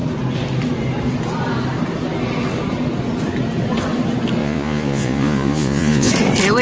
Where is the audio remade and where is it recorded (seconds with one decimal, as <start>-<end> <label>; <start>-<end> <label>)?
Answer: 0.0-4.4 recorded; 4.4-6.1 remade; 6.1-6.6 recorded

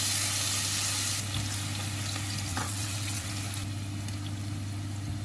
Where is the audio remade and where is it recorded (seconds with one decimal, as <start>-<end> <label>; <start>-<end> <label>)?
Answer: 0.0-2.5 recorded; 2.5-3.3 remade; 3.3-5.2 recorded